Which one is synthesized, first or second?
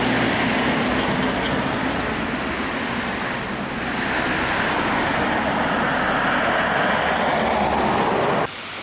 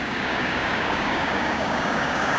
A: second